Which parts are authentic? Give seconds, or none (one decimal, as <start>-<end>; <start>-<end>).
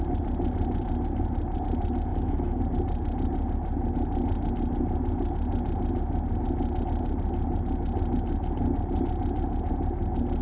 0.0-2.1; 2.6-10.4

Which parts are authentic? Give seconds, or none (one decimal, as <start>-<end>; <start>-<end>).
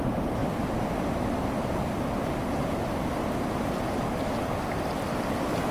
0.0-5.7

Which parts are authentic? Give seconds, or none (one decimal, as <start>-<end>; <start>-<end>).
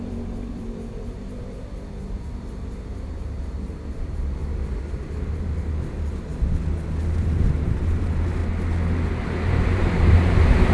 4.4-5.3; 6.3-7.2; 8.4-9.2